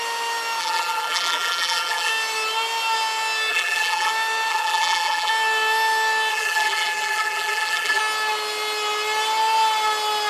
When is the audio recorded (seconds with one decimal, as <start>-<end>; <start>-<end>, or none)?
0.0-0.6; 2.1-3.5; 4.1-4.5; 5.3-6.3; 8.0-10.3